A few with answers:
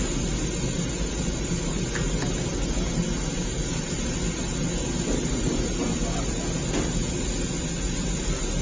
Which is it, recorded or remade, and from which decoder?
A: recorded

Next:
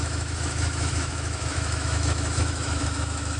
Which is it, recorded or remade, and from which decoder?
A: remade, autoencoder, DAC-VAE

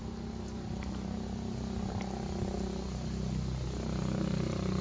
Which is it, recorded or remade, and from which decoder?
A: recorded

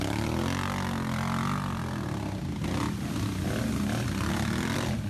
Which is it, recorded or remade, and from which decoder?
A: recorded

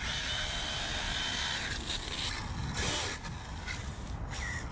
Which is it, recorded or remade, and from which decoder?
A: recorded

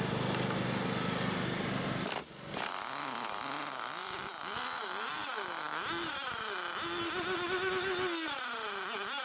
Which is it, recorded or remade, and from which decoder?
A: recorded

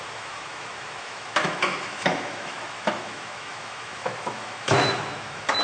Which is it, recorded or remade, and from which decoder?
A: remade, autoencoder, DAC-VAE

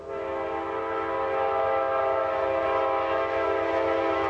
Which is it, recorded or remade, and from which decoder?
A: recorded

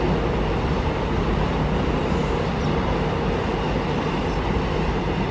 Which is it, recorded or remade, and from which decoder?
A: recorded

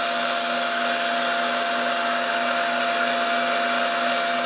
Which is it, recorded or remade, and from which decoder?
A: recorded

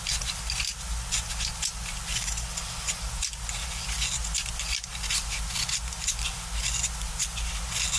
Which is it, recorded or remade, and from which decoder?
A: recorded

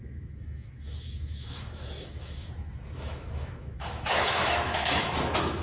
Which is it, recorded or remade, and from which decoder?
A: remade, autoencoder, DAC-VAE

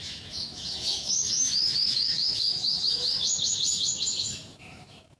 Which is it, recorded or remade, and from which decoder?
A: remade, autoencoder, DAC-VAE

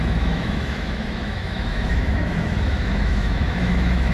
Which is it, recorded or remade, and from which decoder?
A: remade, autoencoder, DAC-VAE